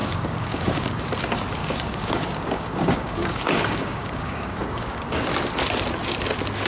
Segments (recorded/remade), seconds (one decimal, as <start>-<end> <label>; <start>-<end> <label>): 0.0-1.0 remade; 1.0-1.6 recorded; 1.6-5.3 remade; 5.3-6.7 recorded